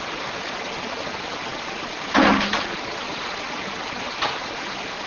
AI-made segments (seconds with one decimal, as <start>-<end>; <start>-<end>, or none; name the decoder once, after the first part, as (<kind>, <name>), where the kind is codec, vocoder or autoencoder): none